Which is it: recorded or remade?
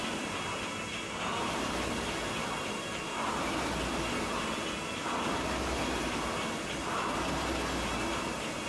recorded